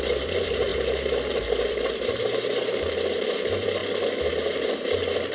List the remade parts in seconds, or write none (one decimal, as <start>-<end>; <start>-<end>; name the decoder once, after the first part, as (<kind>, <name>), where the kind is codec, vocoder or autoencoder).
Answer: 0.0-3.8 (vocoder, BigVGAN v2); 4.3-5.3

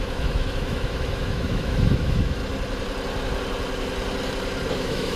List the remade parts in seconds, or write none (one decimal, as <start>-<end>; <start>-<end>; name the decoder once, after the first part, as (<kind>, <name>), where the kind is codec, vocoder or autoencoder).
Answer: 0.0-2.4 (autoencoder, DAC-VAE); 4.7-5.2

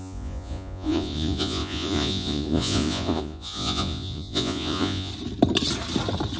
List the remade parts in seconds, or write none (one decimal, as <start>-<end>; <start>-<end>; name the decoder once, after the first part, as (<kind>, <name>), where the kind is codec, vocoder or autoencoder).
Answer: 0.0-5.1 (vocoder, Vocos)

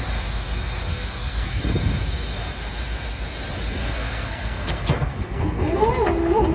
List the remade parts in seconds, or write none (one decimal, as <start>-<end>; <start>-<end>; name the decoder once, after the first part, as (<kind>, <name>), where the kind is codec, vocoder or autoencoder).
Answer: 0.9-1.6 (codec, SNAC); 3.8-5.9

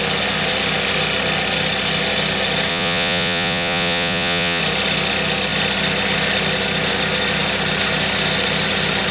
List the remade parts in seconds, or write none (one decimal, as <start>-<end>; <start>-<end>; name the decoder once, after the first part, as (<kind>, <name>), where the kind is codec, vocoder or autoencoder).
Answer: 2.7-4.6 (vocoder, Vocos)